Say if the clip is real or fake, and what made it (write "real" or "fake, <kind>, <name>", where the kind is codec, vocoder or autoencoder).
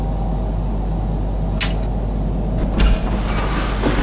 real